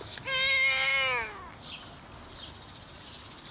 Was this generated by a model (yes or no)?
no